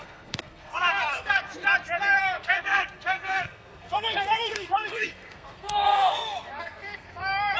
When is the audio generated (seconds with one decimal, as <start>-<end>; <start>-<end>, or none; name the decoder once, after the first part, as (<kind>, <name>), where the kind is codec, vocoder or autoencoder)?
0.0-1.5 (codec, SNAC); 2.2-7.6